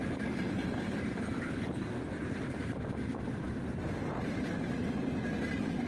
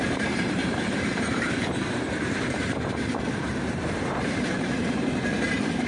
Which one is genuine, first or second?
first